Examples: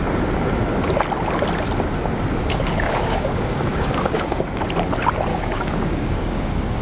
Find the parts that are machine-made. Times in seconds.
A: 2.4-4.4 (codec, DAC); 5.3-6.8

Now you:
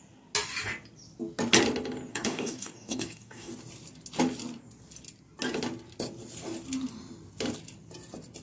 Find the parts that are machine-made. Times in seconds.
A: 2.1-3.5 (codec, DAC)

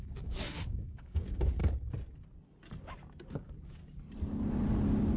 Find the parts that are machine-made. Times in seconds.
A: 0.0-1.6 (codec, DAC); 3.3-3.8